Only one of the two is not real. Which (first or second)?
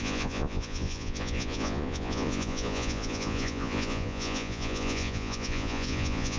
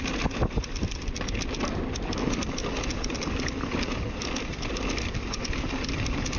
first